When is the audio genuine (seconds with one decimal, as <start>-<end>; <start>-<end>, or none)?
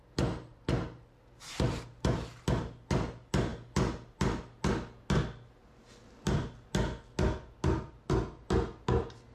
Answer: 0.0-9.3